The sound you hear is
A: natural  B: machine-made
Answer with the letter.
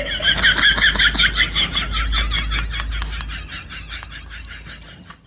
A